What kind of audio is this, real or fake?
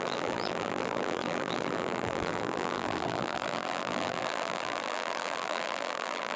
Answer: fake